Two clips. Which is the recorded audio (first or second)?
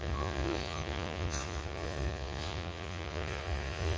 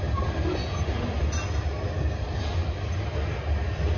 second